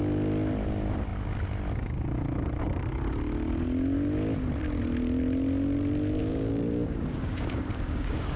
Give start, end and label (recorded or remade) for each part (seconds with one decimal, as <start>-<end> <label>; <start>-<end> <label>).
0.0-6.2 recorded; 6.2-8.4 remade